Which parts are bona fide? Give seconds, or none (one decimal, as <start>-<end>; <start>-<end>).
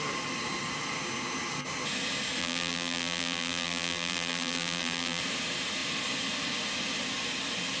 0.0-2.4; 5.2-7.8